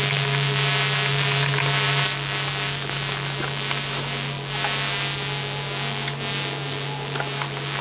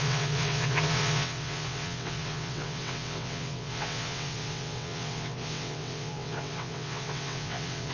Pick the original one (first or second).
first